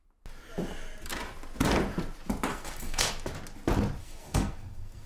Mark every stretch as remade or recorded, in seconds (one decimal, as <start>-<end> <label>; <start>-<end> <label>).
0.0-2.5 recorded; 2.5-3.1 remade; 3.1-4.0 recorded; 4.0-5.1 remade